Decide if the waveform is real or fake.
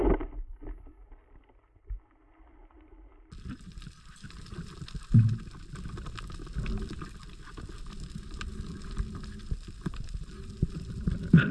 real